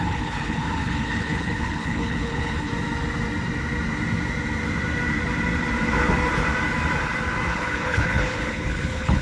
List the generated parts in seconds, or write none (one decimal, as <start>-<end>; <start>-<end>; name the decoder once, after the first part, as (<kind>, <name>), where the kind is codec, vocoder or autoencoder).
0.0-2.7 (codec, HILCodec); 7.5-9.2

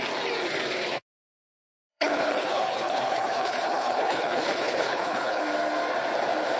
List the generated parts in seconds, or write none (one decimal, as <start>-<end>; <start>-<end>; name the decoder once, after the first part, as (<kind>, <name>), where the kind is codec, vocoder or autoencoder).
1.9-5.4 (codec, HILCodec)